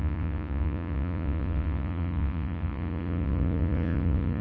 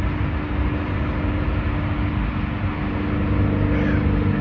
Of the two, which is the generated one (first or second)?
first